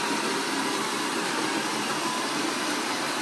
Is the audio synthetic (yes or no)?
yes